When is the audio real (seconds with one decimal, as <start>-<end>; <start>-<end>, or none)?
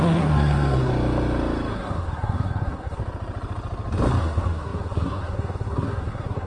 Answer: 0.9-1.7; 3.0-4.2